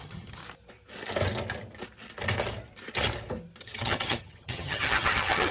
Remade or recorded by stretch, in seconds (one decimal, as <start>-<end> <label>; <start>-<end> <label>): 0.0-0.4 remade; 0.4-3.6 recorded; 3.6-5.5 remade

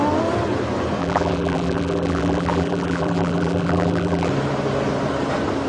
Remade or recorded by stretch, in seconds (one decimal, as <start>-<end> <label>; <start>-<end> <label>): 0.0-1.0 recorded; 1.0-4.3 remade; 4.3-5.7 recorded

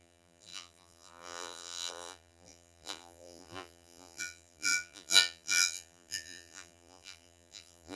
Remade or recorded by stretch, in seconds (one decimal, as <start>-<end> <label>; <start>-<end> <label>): 0.0-8.0 remade

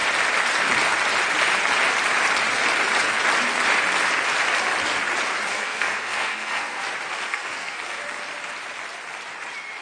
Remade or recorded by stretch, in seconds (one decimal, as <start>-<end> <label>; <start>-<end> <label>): 0.0-5.5 recorded; 5.5-6.8 remade; 6.8-7.3 recorded; 7.3-8.0 remade; 8.0-9.8 recorded

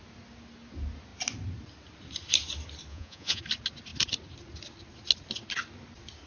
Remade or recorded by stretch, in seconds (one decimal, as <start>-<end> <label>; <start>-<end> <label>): 0.0-2.9 recorded; 2.9-3.4 remade; 3.4-6.3 recorded